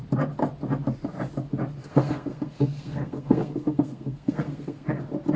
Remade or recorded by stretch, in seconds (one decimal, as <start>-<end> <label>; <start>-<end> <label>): 0.0-1.8 recorded; 1.8-5.0 remade; 5.0-5.4 recorded